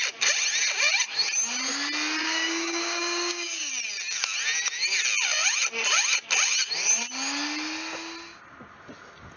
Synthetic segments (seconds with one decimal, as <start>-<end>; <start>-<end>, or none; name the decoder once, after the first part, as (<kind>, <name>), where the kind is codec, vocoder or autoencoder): 2.2-3.7 (codec, DAC)